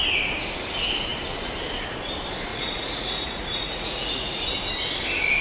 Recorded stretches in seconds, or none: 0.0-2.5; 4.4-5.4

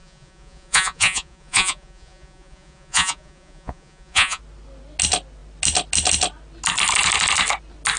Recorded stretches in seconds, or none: 4.4-8.0

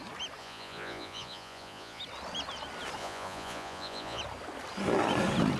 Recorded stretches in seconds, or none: 0.0-0.4; 2.0-3.0; 4.2-5.6

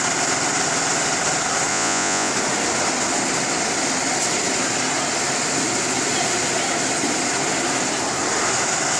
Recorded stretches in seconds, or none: 0.0-1.7; 2.3-9.0

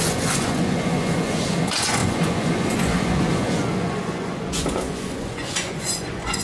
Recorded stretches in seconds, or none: none

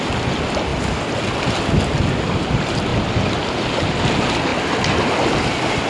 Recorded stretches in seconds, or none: 0.0-5.9

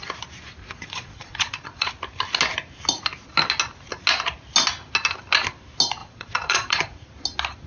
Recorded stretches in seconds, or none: 0.0-0.6; 1.9-6.0; 7.0-7.7